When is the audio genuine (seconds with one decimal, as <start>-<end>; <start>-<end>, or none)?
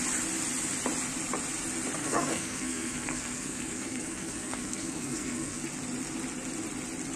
0.0-2.0; 5.6-7.2